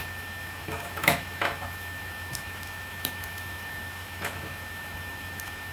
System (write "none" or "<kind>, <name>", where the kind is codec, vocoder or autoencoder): autoencoder, DAC-VAE